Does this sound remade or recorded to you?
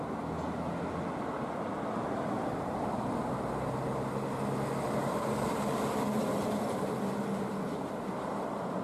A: recorded